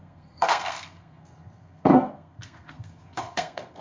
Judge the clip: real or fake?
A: fake